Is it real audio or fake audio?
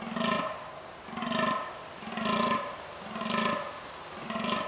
real